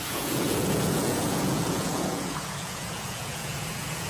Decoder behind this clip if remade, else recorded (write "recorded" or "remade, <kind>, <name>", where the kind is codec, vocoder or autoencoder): remade, vocoder, Vocos